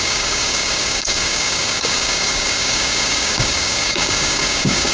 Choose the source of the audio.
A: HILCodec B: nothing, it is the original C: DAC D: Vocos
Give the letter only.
C